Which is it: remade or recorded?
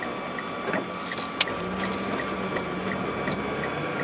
recorded